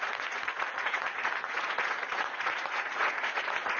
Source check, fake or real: fake